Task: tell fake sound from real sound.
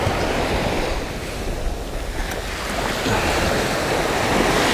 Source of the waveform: real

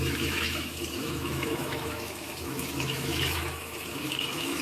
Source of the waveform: fake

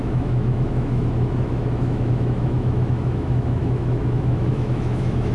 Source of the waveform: fake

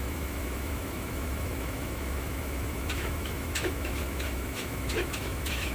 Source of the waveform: fake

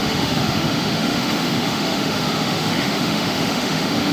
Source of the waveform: fake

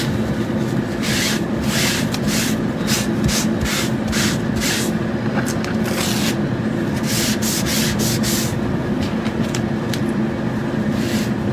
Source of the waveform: real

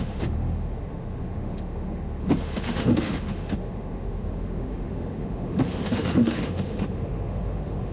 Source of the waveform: fake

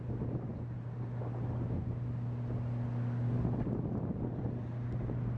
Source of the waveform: real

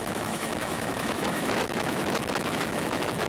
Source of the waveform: fake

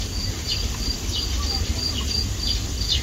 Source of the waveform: real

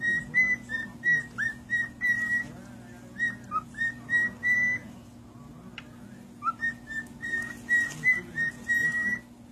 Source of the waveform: real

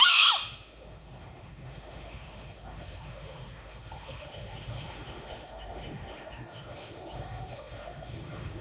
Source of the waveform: fake